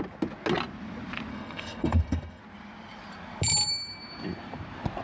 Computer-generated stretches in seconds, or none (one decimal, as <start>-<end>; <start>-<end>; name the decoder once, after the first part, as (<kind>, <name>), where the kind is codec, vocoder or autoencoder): 1.3-2.4 (codec, SNAC)